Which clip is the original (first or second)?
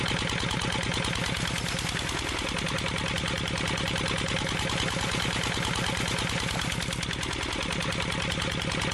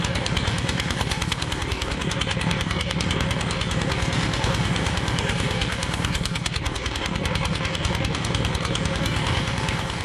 first